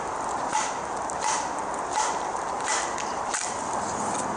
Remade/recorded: recorded